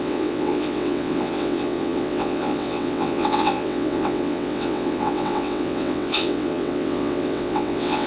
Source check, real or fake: fake